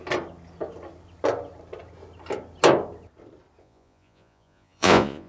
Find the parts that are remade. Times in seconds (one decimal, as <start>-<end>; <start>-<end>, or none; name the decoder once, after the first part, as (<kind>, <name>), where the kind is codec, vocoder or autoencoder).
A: 3.6-5.3 (vocoder, Vocos)